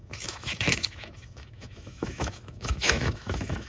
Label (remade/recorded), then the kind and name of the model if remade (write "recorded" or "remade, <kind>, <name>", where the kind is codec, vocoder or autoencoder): remade, autoencoder, DAC-VAE